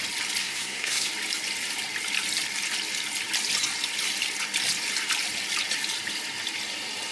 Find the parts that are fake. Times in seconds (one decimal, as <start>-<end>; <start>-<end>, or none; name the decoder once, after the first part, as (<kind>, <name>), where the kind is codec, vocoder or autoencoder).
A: 0.4-1.1 (codec, SNAC)